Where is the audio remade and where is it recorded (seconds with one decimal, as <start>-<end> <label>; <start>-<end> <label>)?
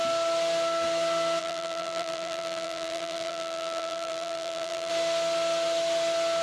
0.0-1.4 recorded; 1.4-4.9 remade; 4.9-6.4 recorded